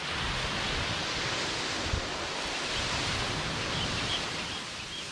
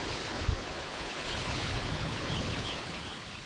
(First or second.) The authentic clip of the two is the first